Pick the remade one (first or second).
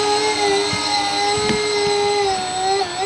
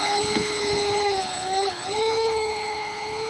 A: second